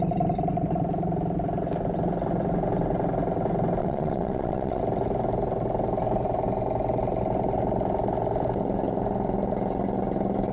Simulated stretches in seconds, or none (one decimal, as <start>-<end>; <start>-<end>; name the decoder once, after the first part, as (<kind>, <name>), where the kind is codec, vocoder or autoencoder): 3.8-4.8 (vocoder, Vocos)